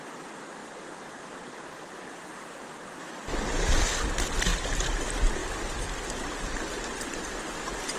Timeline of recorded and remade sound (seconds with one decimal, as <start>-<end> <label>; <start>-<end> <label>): 0.0-4.5 recorded; 4.5-5.0 remade; 5.0-5.4 recorded; 5.4-7.5 remade; 7.5-8.0 recorded